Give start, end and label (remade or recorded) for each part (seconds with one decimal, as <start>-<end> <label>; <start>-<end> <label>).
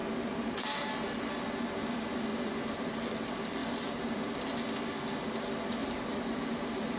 0.0-0.9 remade; 0.9-2.3 recorded; 2.3-3.0 remade; 3.0-3.6 recorded; 3.6-4.2 remade; 4.2-5.8 recorded; 5.8-7.0 remade